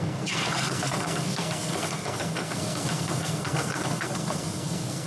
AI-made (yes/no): yes